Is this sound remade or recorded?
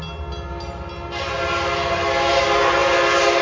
recorded